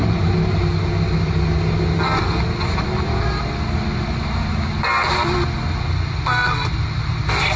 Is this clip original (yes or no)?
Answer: yes